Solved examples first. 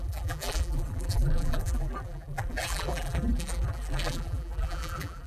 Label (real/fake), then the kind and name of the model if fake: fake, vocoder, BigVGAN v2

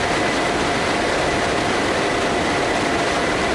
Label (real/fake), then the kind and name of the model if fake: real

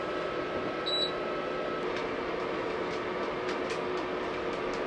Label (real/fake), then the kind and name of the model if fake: real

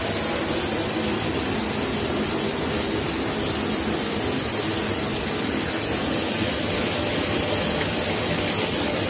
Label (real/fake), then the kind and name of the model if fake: real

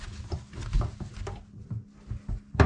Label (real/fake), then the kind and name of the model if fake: real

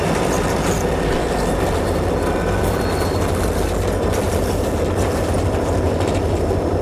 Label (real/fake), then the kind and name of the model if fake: fake, vocoder, BigVGAN v2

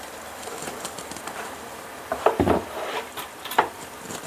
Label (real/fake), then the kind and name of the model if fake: fake, vocoder, BigVGAN v2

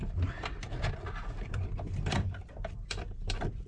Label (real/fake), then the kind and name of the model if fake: fake, vocoder, BigVGAN v2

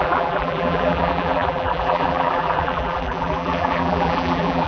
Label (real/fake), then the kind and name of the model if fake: fake, vocoder, BigVGAN v2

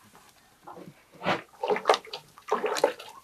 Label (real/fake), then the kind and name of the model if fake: real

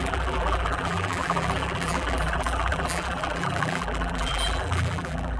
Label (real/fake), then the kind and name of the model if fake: fake, vocoder, BigVGAN v2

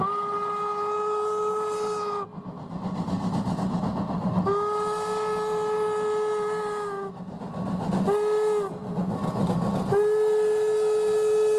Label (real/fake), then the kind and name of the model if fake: real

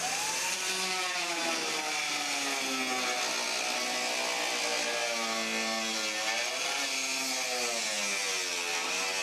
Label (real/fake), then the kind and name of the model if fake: real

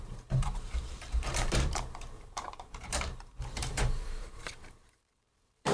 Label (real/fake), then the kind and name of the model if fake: fake, vocoder, BigVGAN v2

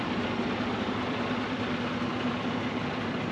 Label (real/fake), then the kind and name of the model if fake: fake, vocoder, BigVGAN v2